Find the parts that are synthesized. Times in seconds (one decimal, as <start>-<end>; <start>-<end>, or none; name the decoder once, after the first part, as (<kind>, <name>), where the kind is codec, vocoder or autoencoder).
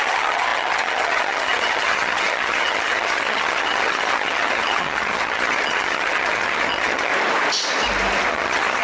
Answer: 0.0-7.1 (vocoder, HiFi-GAN); 8.3-8.8